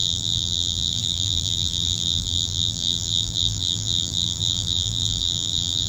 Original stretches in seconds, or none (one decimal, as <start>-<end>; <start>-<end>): none